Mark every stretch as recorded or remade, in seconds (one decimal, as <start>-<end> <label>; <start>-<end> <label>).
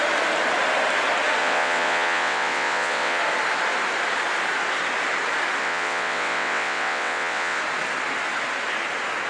0.0-1.4 recorded; 1.4-3.2 remade; 3.2-5.6 recorded; 5.6-7.6 remade; 7.6-9.3 recorded